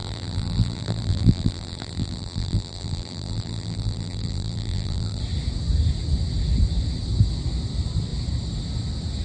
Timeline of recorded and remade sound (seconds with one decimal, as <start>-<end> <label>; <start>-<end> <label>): 0.0-5.2 remade; 5.2-9.2 recorded